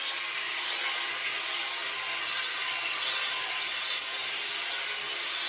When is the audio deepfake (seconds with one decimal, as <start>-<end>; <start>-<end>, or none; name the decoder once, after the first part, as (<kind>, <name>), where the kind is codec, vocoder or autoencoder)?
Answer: none